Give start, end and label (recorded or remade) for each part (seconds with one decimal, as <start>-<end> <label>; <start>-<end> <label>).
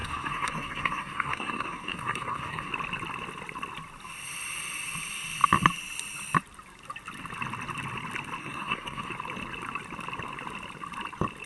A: 0.0-2.7 remade; 2.7-8.4 recorded; 8.4-9.1 remade; 9.1-11.5 recorded